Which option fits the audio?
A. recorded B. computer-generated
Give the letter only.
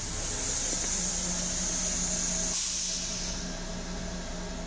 A